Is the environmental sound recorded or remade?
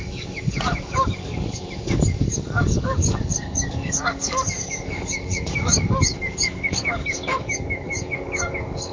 remade